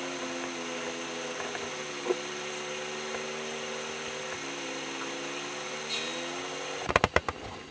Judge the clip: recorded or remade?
recorded